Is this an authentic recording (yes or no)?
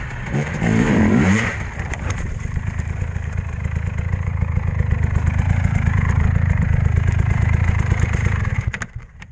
no